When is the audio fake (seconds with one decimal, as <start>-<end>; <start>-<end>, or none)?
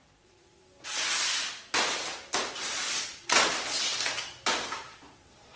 0.0-0.6; 2.5-3.5; 4.8-5.6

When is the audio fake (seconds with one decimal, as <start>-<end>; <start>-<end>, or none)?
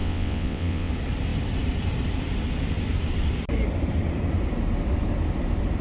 0.0-0.9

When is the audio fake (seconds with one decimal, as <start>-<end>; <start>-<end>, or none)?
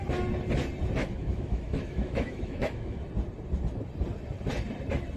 1.0-3.0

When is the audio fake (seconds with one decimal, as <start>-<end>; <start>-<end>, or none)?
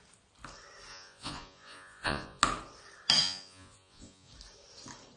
0.9-2.4; 3.2-4.3